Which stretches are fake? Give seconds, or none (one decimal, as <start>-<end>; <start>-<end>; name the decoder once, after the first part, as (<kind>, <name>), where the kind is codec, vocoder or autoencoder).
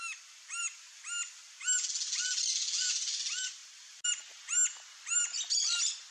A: none